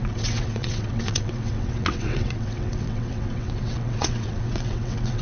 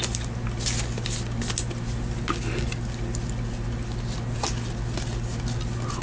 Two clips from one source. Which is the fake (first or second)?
first